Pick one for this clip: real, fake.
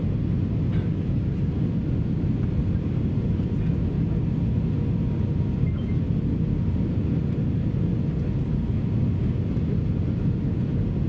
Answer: real